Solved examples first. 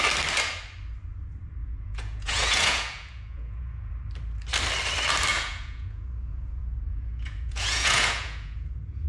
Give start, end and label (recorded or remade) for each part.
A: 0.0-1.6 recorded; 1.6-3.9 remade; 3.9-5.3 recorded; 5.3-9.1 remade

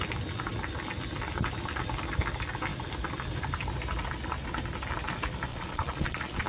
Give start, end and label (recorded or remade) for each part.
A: 0.0-5.5 recorded; 5.5-6.5 remade

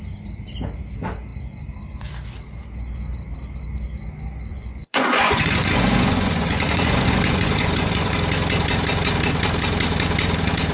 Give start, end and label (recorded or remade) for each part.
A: 0.0-4.5 recorded; 4.5-8.1 remade; 8.1-10.7 recorded

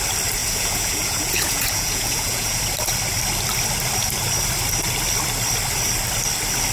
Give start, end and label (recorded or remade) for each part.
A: 0.0-0.4 recorded; 0.4-2.6 remade; 2.6-6.7 recorded

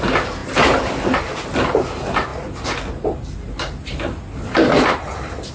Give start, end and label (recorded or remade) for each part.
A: 0.0-5.5 recorded

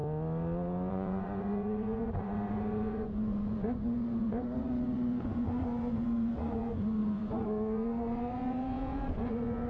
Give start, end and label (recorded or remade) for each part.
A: 0.0-0.9 recorded; 0.9-9.7 remade